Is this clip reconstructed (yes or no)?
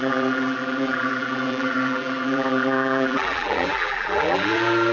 yes